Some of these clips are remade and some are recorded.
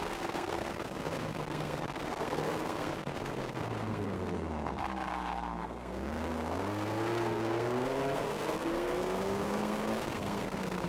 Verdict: remade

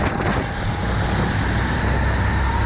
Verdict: recorded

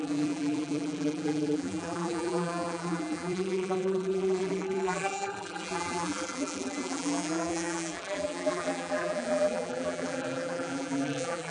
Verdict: remade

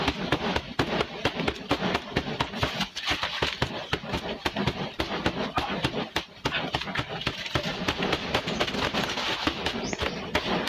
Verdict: recorded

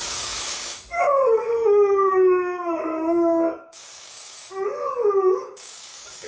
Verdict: remade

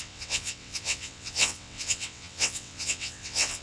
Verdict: remade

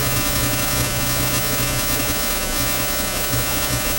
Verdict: remade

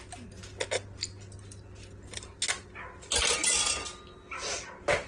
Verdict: recorded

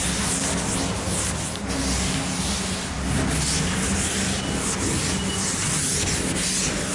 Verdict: recorded